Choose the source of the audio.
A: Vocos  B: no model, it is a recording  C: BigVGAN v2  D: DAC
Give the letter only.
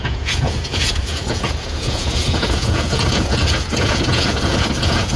A